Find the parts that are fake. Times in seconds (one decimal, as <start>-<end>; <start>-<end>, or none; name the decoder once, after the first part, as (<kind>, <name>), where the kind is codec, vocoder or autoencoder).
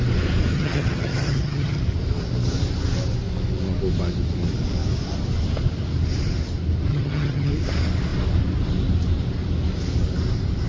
0.5-1.8 (vocoder, HiFi-GAN); 6.9-7.5